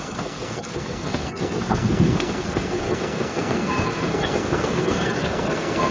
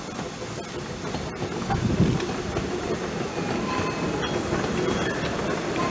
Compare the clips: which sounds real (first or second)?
second